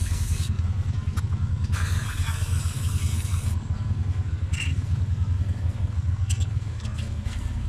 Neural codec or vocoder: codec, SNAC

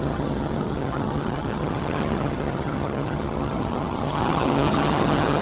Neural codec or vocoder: vocoder, HiFi-GAN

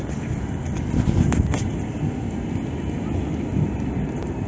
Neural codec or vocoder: none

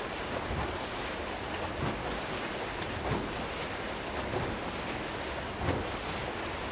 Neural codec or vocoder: none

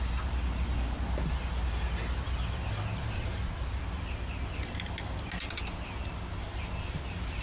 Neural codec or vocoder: none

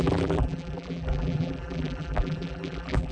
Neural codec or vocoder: vocoder, BigVGAN v2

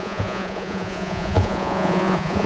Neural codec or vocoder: vocoder, Vocos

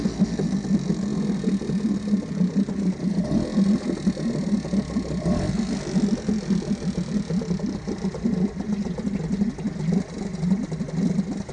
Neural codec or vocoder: none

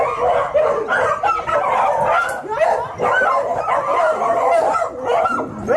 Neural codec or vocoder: none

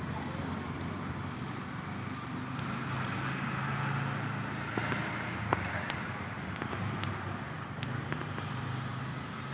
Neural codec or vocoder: none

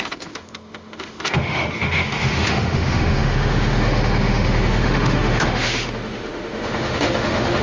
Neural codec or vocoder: autoencoder, DAC-VAE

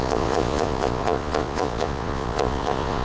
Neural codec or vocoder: vocoder, Vocos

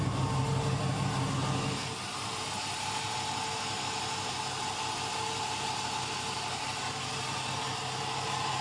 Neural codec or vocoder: none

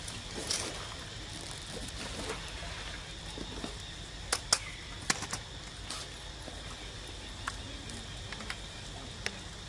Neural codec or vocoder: none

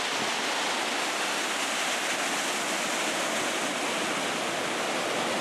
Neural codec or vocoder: none